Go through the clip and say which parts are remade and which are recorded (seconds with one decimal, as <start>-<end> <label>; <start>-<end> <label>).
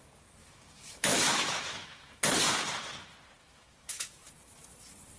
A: 0.0-0.4 recorded; 0.4-2.2 remade; 2.2-3.4 recorded; 3.4-4.3 remade; 4.3-5.2 recorded